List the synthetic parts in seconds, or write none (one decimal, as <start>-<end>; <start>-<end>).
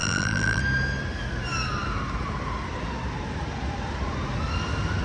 0.0-0.6